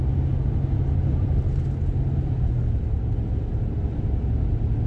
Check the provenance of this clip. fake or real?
real